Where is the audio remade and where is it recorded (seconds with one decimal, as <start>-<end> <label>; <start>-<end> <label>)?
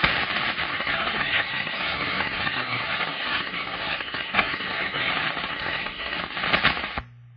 0.0-0.7 recorded; 0.7-5.1 remade; 5.1-5.5 recorded; 5.5-6.2 remade; 6.2-7.4 recorded